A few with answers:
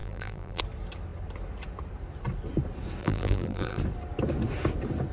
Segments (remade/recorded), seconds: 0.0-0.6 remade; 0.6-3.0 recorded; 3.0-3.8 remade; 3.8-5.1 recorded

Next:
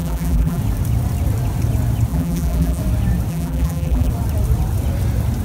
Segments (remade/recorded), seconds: 0.0-0.6 remade; 0.6-2.1 recorded; 2.1-2.8 remade; 2.8-3.3 recorded; 3.3-4.1 remade; 4.1-5.4 recorded